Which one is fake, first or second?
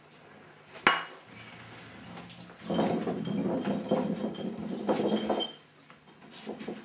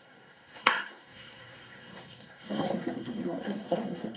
second